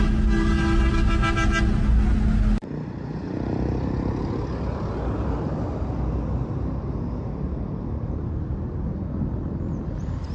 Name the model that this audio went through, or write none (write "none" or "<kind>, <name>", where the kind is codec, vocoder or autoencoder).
none